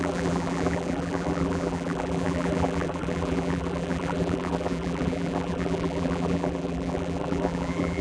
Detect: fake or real fake